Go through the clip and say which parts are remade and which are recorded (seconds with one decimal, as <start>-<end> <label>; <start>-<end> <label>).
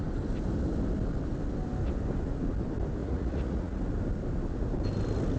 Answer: 0.0-3.0 recorded; 3.0-3.8 remade; 3.8-5.4 recorded